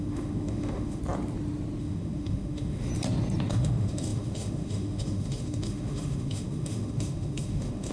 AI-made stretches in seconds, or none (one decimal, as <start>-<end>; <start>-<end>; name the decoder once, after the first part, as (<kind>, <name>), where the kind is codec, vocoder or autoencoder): 0.0-1.0 (autoencoder, DAC-VAE); 1.8-2.9; 3.5-7.9